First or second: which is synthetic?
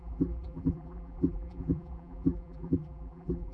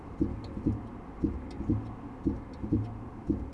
first